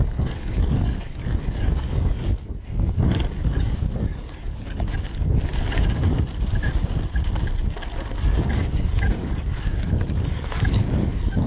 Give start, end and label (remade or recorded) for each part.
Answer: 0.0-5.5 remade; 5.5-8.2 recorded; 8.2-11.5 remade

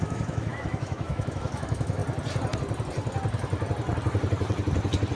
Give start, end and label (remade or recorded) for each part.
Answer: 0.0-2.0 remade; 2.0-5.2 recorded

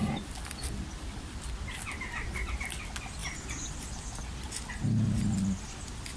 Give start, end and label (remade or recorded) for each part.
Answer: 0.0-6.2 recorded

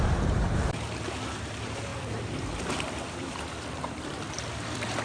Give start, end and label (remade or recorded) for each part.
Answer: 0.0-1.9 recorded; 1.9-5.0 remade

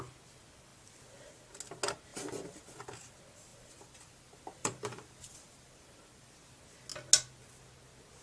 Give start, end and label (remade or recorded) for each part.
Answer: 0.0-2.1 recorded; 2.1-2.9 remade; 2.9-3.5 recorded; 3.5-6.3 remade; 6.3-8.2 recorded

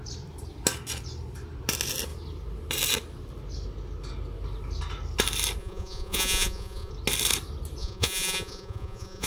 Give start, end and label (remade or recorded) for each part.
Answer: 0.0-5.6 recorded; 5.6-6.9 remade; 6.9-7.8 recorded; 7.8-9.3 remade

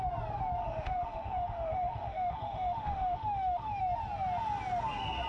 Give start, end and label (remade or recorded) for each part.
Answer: 0.0-0.6 recorded; 0.6-3.8 remade; 3.8-5.3 recorded

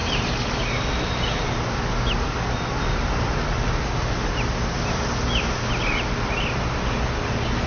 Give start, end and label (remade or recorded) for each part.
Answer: 0.0-7.7 recorded